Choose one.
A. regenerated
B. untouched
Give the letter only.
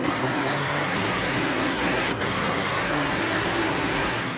A